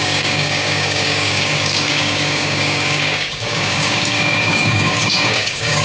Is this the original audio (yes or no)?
no